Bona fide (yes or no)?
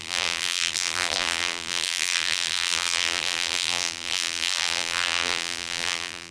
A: no